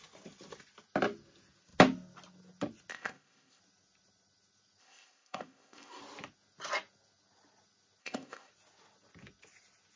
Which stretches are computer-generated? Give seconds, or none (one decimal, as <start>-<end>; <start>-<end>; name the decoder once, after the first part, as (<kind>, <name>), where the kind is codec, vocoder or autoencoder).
2.9-3.6 (codec, ZipCodec); 4.8-6.0; 8.0-8.5